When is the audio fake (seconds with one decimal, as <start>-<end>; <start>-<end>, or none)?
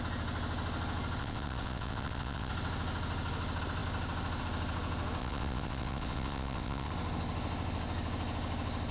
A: 1.2-2.5; 5.2-6.9